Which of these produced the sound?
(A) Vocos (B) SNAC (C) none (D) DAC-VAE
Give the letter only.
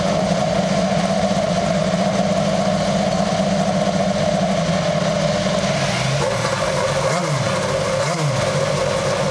C